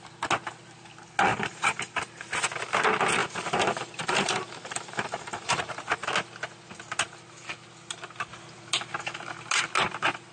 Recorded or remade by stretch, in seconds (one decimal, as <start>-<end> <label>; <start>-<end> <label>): 0.0-1.3 recorded; 1.3-2.0 remade; 2.0-3.2 recorded; 3.2-5.6 remade; 5.6-10.3 recorded